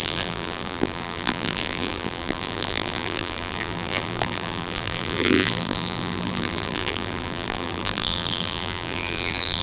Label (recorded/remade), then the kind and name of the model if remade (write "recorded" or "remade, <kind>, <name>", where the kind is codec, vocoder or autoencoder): remade, vocoder, BigVGAN v2